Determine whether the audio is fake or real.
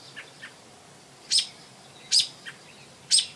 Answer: real